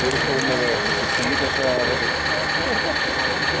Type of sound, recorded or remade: recorded